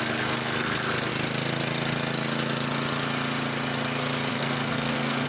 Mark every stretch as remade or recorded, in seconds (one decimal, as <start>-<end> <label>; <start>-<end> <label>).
0.0-1.1 remade; 1.1-4.3 recorded; 4.3-5.3 remade